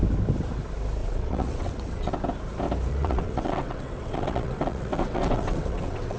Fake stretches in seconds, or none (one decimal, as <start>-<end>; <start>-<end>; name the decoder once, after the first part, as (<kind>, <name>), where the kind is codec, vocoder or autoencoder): 1.0-2.1 (vocoder, WaveNeXt); 2.9-6.2